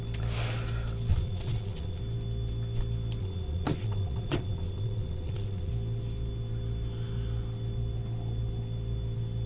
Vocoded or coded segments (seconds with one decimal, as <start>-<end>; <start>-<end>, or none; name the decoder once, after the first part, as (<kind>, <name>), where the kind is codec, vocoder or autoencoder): 1.1-2.0 (vocoder, Vocos); 3.2-5.7